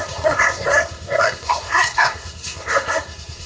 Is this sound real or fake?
fake